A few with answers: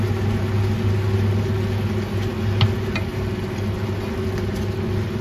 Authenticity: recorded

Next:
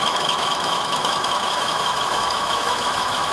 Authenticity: remade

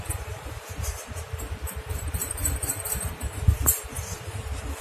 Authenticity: remade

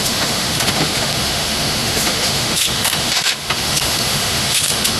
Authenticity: remade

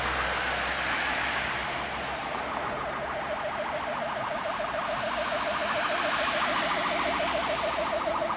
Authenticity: recorded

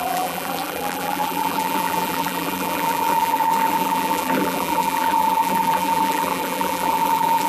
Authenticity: remade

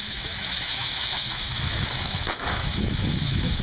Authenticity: remade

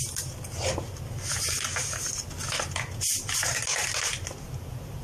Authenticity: recorded